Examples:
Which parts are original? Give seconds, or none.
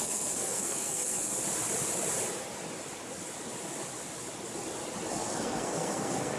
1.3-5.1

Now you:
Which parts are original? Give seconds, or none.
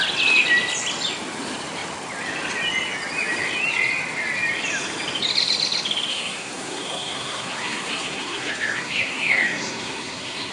0.0-6.1